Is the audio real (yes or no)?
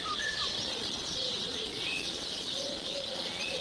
no